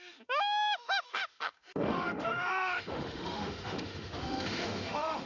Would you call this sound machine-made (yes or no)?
yes